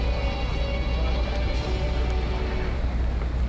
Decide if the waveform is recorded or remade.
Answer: recorded